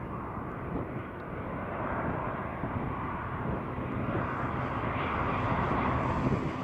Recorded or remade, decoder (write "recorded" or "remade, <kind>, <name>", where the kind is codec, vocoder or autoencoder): recorded